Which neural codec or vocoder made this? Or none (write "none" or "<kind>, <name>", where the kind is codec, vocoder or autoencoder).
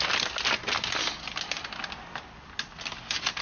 none